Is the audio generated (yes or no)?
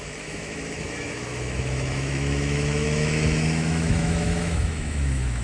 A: yes